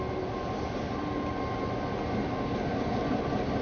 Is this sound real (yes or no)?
yes